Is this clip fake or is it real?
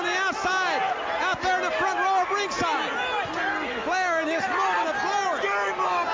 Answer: real